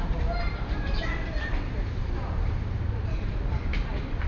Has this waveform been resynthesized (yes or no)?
yes